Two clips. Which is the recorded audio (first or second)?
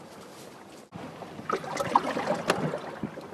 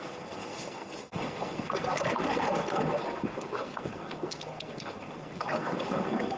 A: first